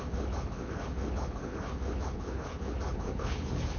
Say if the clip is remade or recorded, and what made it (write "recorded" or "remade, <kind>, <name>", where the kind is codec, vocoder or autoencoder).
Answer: remade, codec, HILCodec